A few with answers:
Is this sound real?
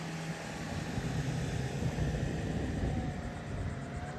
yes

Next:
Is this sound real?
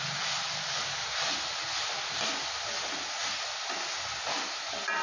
yes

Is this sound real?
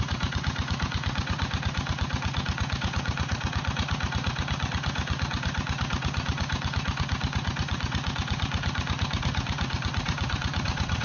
no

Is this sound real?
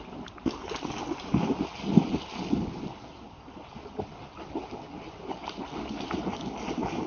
yes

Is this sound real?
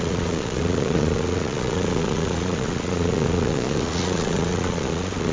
no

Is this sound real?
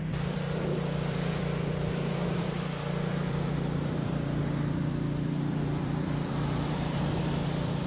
no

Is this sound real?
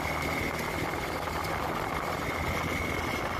yes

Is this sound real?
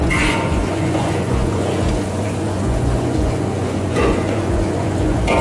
no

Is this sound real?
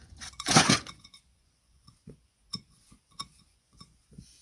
no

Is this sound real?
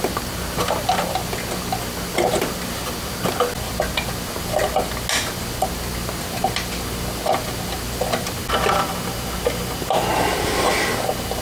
yes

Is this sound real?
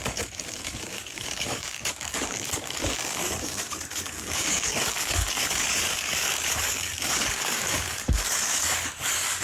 no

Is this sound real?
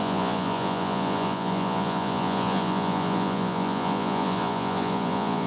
no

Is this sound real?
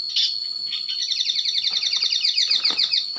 yes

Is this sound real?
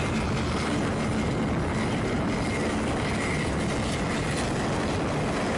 yes